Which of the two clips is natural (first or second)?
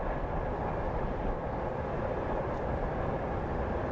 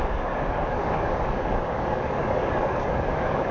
first